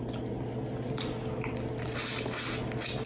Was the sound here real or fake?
real